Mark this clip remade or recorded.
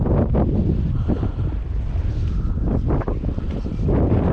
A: recorded